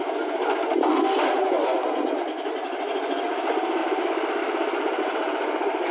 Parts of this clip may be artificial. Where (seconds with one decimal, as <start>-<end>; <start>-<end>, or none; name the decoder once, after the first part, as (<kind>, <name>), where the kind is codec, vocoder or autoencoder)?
3.8-5.0 (vocoder, BigVGAN v2)